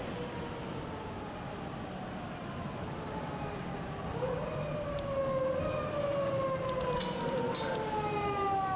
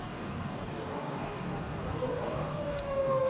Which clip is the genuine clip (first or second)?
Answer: first